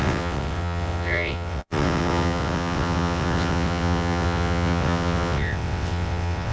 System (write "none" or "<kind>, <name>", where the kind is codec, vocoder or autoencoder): vocoder, WaveNeXt